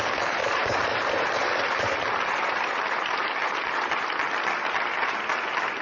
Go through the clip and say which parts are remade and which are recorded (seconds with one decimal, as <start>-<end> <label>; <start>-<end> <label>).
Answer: 0.0-0.4 recorded; 0.4-3.9 remade; 3.9-5.8 recorded